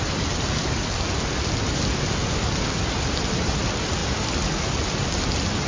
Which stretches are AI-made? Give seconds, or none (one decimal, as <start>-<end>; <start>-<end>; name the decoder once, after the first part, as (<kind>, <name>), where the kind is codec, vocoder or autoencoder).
none